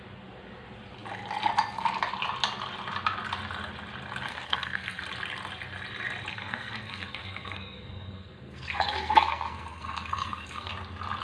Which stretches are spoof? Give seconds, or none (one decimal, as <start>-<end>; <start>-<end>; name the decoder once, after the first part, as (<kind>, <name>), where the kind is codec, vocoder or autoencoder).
4.3-5.0 (codec, SNAC); 6.3-10.7